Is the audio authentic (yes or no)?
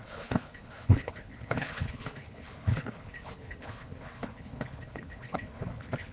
no